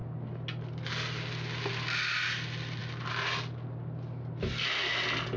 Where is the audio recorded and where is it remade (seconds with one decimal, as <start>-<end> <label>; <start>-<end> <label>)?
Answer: 0.0-5.4 recorded

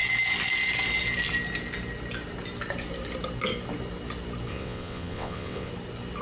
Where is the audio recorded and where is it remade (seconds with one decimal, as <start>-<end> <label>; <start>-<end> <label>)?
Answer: 0.0-4.5 recorded; 4.5-5.7 remade; 5.7-6.2 recorded

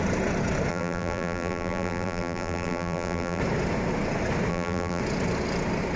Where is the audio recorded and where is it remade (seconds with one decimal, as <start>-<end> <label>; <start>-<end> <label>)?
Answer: 0.0-0.7 recorded; 0.7-3.4 remade; 3.4-4.5 recorded; 4.5-5.0 remade; 5.0-6.0 recorded